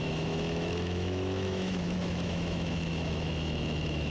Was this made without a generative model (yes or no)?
no